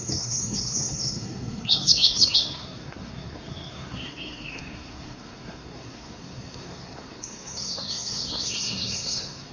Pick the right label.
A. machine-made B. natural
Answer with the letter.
A